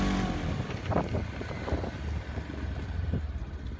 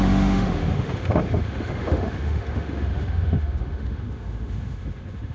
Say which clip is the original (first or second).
first